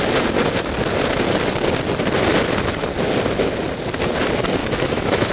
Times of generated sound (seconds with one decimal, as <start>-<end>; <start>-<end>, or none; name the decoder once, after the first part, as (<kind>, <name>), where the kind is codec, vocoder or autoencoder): 4.6-5.3 (autoencoder, DAC-VAE)